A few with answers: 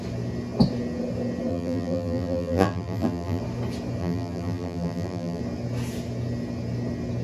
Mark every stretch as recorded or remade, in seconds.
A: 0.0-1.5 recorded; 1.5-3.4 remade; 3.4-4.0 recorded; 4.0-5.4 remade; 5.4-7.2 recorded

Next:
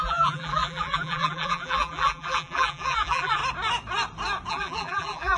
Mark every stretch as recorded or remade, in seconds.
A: 0.0-3.4 remade; 3.4-4.5 recorded; 4.5-5.4 remade

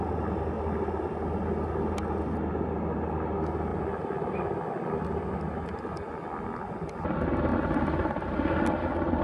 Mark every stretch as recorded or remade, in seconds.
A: 0.0-9.2 recorded

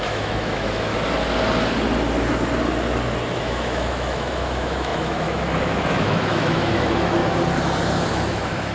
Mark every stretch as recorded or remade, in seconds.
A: 0.0-0.9 remade; 0.9-3.4 recorded; 3.4-7.2 remade; 7.2-8.1 recorded; 8.1-8.7 remade

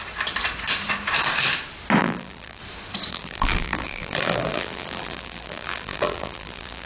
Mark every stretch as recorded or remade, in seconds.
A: 0.0-2.0 recorded; 2.0-2.6 remade; 2.6-3.1 recorded; 3.1-6.9 remade

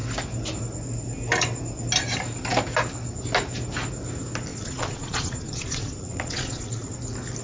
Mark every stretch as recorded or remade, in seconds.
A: 0.0-4.5 recorded; 4.5-6.9 remade; 6.9-7.4 recorded